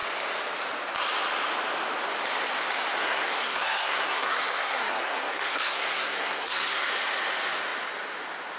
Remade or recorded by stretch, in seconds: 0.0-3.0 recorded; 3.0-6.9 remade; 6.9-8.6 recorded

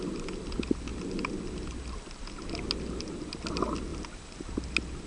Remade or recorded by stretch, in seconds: 0.0-5.1 recorded